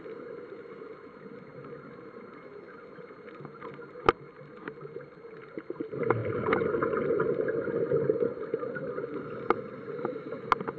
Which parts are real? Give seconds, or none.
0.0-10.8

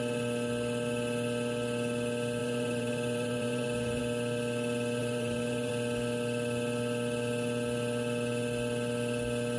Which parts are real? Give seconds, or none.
0.0-2.4; 4.0-5.0; 5.7-9.6

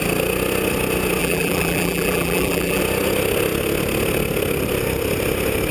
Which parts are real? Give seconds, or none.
0.0-1.2; 2.8-5.7

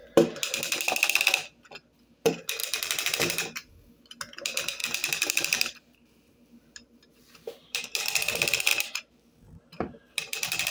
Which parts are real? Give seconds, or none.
0.6-2.6; 3.7-4.8; 8.0-8.7

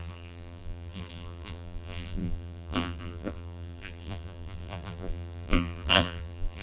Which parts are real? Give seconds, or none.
none

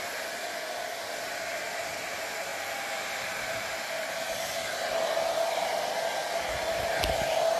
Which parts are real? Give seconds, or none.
0.0-2.5; 4.5-7.6